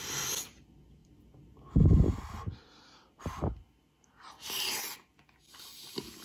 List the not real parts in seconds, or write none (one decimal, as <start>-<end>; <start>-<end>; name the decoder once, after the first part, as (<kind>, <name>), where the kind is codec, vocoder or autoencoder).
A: none